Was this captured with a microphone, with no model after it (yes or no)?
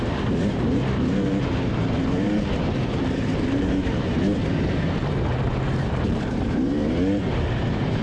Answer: no